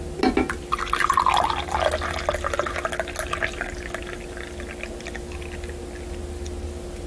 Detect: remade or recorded recorded